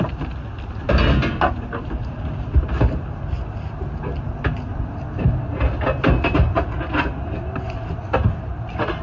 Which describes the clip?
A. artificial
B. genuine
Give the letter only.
B